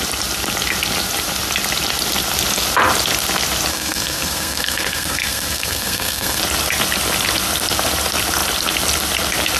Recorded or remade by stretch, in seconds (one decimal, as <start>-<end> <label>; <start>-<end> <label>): 0.0-3.7 recorded; 3.7-6.4 remade; 6.4-9.6 recorded